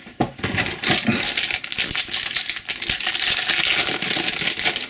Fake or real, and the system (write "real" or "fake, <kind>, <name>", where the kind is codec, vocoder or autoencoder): real